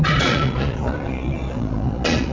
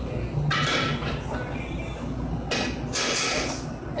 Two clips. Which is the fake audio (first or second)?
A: first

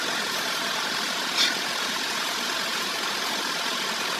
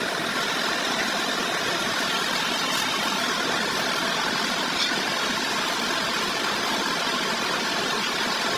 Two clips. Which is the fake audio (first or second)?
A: first